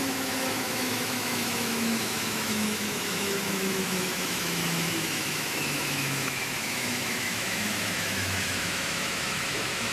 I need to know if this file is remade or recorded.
remade